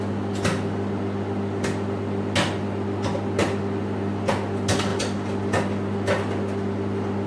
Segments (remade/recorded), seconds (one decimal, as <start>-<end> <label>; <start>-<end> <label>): 0.0-7.3 recorded